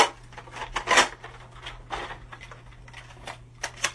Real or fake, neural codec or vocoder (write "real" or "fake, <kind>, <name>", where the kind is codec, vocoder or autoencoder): real